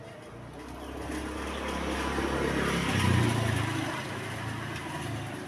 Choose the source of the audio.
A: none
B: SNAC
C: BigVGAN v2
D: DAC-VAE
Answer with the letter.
A